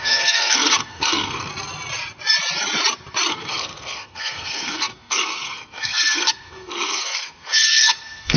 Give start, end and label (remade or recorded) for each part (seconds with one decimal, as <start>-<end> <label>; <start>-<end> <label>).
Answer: 0.0-1.5 remade; 1.5-3.3 recorded; 3.3-8.4 remade